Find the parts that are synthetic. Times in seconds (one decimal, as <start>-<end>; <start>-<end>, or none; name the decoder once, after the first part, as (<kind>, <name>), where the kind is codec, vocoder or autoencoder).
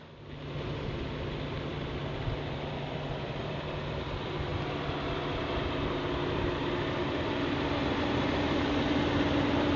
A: none